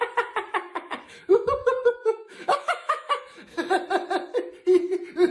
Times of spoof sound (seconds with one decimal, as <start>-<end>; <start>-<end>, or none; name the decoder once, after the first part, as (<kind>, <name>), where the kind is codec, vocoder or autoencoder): 0.5-3.7 (autoencoder, DAC-VAE)